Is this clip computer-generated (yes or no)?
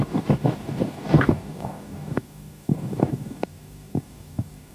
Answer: yes